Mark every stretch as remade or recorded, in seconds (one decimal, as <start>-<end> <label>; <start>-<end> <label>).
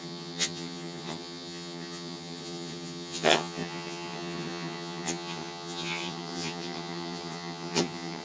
0.0-8.2 remade